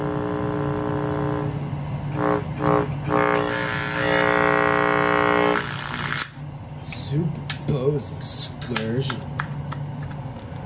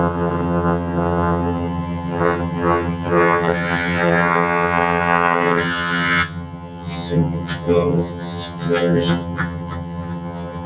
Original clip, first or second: first